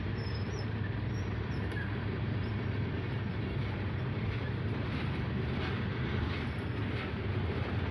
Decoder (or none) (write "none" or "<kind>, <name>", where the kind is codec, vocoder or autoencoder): vocoder, BigVGAN v2